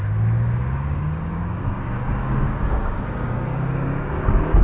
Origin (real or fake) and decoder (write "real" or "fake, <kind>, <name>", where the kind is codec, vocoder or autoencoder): fake, codec, DAC